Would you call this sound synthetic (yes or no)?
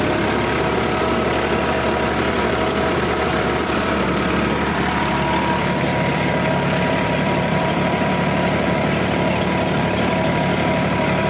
yes